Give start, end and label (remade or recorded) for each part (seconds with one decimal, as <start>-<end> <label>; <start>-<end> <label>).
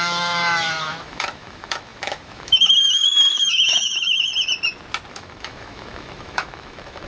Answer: 0.0-4.3 remade; 4.3-5.1 recorded; 5.1-7.1 remade